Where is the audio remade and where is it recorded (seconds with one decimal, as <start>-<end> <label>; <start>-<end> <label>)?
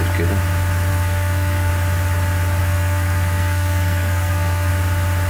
0.0-0.9 recorded; 0.9-1.7 remade; 1.7-2.6 recorded; 2.6-4.7 remade; 4.7-5.3 recorded